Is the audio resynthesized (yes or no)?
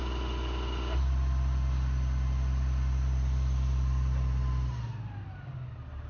no